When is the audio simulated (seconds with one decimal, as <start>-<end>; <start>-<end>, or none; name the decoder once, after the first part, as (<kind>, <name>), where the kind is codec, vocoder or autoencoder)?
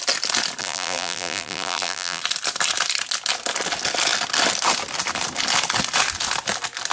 0.6-2.2 (vocoder, BigVGAN v2)